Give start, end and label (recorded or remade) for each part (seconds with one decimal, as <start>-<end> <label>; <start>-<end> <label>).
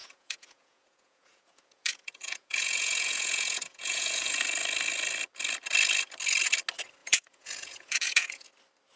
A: 0.0-4.4 remade; 4.4-7.0 recorded; 7.0-8.5 remade; 8.5-9.0 recorded